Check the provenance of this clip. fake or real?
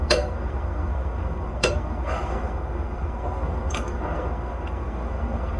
fake